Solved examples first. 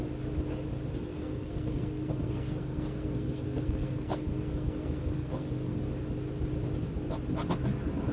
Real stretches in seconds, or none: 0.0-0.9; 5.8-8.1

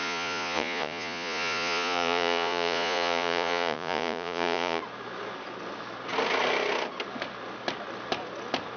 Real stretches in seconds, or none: 4.8-8.8